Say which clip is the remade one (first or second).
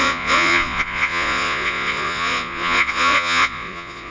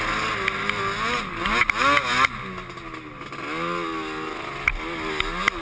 first